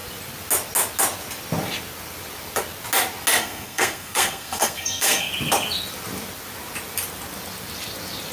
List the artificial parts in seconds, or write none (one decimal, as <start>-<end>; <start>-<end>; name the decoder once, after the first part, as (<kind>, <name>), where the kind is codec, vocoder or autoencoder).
3.4-5.3 (codec, SNAC)